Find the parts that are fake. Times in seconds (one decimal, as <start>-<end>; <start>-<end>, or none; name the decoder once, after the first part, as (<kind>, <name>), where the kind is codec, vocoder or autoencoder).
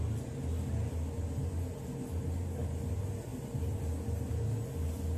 none